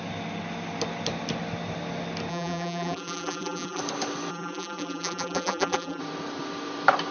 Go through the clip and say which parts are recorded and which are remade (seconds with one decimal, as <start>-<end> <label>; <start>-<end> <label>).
0.0-2.3 recorded; 2.3-3.8 remade; 3.8-4.3 recorded; 4.3-6.0 remade; 6.0-7.1 recorded